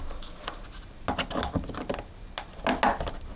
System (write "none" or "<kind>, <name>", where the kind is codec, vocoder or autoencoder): none